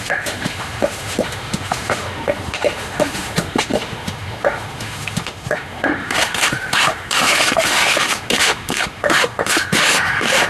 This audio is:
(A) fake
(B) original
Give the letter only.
A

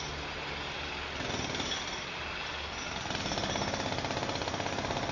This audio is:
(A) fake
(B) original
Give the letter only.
B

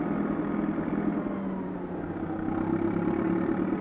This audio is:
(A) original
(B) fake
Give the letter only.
A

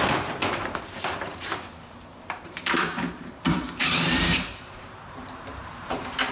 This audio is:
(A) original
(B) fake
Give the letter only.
B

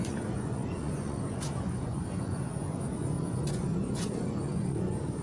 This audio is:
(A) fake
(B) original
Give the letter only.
A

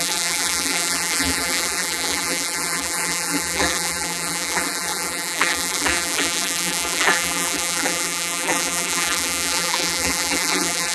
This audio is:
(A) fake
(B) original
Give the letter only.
A